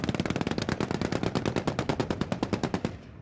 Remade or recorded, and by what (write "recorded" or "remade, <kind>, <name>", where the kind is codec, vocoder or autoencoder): recorded